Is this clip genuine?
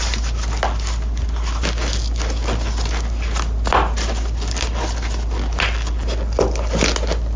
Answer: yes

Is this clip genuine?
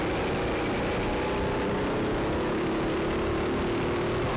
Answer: yes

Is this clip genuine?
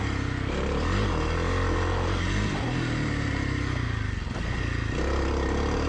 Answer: yes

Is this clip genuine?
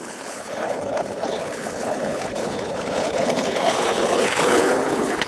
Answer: no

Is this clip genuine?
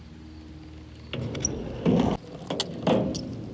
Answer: yes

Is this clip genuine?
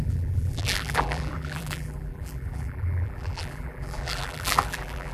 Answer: no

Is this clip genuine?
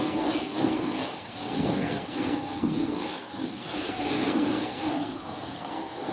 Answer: no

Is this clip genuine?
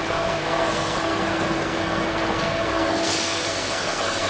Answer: no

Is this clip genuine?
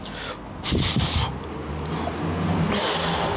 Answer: yes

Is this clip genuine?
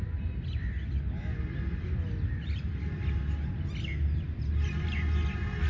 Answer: yes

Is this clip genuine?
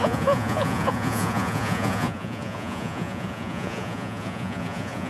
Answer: no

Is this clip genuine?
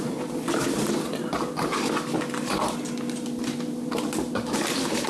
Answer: yes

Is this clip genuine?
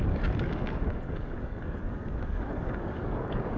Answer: no